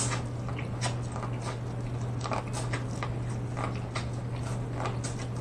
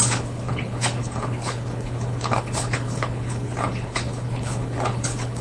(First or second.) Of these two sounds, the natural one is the first